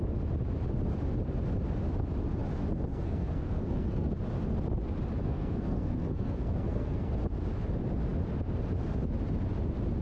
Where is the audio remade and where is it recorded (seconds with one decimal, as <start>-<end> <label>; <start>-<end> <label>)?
0.0-2.9 recorded; 2.9-4.1 remade; 4.1-5.2 recorded; 5.2-7.1 remade; 7.1-10.0 recorded